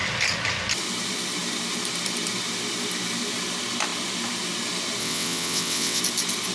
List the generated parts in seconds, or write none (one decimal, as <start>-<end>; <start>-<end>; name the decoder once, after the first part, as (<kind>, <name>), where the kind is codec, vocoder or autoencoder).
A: 5.0-6.0 (vocoder, WaveNeXt)